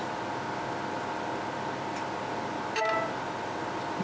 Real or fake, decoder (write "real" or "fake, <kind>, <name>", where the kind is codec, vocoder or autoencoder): real